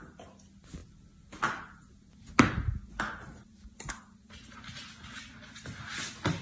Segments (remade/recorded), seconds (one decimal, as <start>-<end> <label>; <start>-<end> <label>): 0.0-6.4 recorded